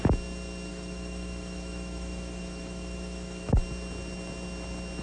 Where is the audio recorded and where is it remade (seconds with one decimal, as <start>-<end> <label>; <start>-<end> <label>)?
0.0-0.7 recorded; 0.7-3.6 remade; 3.6-5.0 recorded

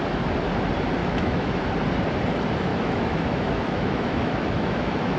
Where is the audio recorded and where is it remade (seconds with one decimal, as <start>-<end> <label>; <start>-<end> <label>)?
0.0-1.0 recorded; 1.0-1.6 remade; 1.6-2.7 recorded; 2.7-5.2 remade

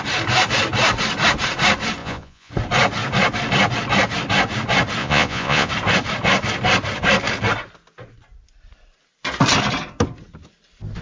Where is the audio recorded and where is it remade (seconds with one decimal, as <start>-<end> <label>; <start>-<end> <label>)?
0.0-2.0 recorded; 2.0-2.5 remade; 2.5-5.0 recorded; 5.0-5.7 remade; 5.7-11.0 recorded

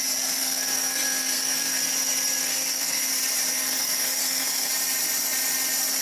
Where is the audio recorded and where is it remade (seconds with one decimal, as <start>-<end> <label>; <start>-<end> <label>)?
0.0-0.4 recorded; 0.4-1.8 remade; 1.8-2.4 recorded; 2.4-3.1 remade; 3.1-3.5 recorded; 3.5-4.7 remade; 4.7-6.0 recorded

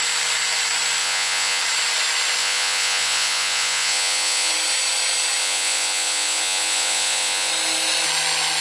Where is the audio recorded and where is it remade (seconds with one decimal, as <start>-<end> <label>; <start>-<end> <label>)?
0.0-1.0 recorded; 1.0-1.6 remade; 1.6-2.4 recorded; 2.4-4.5 remade; 4.5-5.4 recorded; 5.4-7.5 remade; 7.5-8.6 recorded

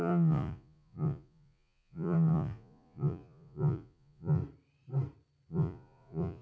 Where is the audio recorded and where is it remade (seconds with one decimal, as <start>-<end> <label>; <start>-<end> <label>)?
0.0-4.4 remade; 4.4-5.5 recorded; 5.5-6.4 remade

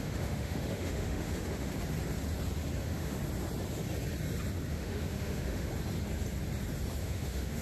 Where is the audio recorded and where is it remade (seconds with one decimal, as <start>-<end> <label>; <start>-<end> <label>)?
0.0-1.7 remade; 1.7-2.8 recorded; 2.8-3.2 remade; 3.2-4.7 recorded; 4.7-5.7 remade; 5.7-7.0 recorded; 7.0-7.6 remade